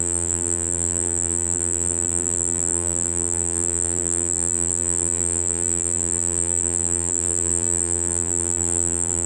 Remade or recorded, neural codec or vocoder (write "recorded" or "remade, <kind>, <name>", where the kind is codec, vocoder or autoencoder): remade, vocoder, BigVGAN v2